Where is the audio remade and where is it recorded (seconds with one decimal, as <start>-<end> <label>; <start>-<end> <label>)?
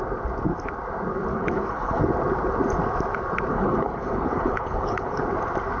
0.0-1.3 recorded; 1.3-2.0 remade; 2.0-3.5 recorded; 3.5-5.2 remade; 5.2-5.8 recorded